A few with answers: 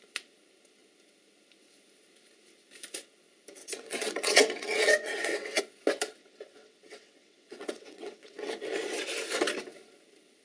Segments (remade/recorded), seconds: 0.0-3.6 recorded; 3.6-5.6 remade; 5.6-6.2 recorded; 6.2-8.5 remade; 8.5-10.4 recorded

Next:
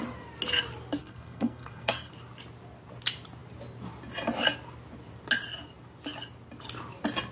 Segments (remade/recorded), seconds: 0.0-1.0 recorded; 1.0-2.1 remade; 2.1-7.3 recorded

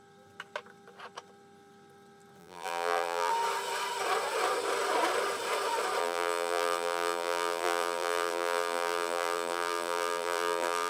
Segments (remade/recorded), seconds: 0.0-2.4 recorded; 2.4-3.3 remade; 3.3-6.0 recorded; 6.0-10.9 remade

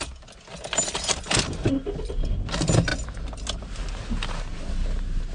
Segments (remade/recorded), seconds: 0.0-5.3 recorded

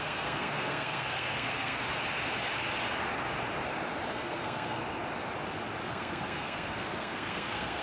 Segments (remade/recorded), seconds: 0.0-1.8 remade; 1.8-4.1 recorded; 4.1-4.8 remade; 4.8-5.9 recorded; 5.9-7.8 remade

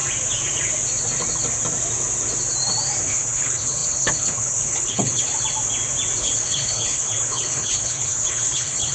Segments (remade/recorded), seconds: 0.0-3.0 recorded; 3.0-5.3 remade; 5.3-6.2 recorded; 6.2-8.9 remade